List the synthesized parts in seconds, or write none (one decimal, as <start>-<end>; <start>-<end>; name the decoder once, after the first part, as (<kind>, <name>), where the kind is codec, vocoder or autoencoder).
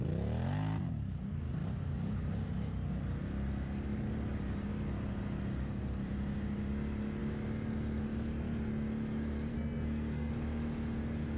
9.5-10.3 (codec, SNAC)